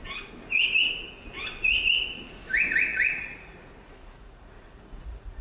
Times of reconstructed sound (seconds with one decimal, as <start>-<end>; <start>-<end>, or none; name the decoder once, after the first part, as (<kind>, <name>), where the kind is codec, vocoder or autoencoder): 2.9-5.4 (vocoder, Vocos)